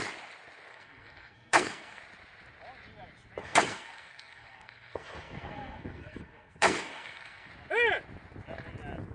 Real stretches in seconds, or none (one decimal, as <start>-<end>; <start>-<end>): 0.0-0.7; 2.0-3.4; 7.5-9.1